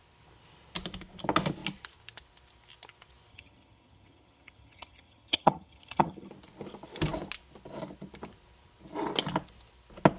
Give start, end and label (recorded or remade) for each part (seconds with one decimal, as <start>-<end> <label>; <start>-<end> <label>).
0.0-3.3 recorded; 3.3-6.3 remade; 6.3-10.2 recorded